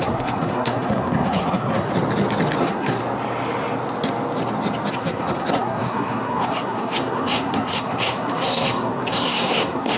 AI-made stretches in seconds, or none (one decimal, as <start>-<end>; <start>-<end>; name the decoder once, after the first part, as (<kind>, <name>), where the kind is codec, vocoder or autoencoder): 0.0-1.9 (codec, SNAC); 2.6-3.0; 4.9-10.0